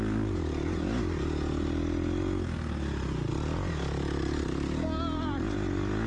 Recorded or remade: recorded